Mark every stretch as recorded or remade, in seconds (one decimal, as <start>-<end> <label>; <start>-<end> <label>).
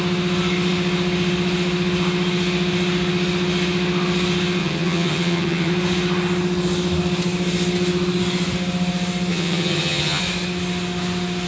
0.0-4.6 recorded; 4.6-5.7 remade; 5.7-9.3 recorded; 9.3-10.2 remade; 10.2-11.5 recorded